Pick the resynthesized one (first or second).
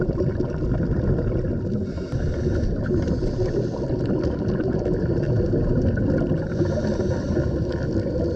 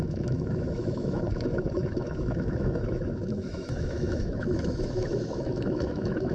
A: second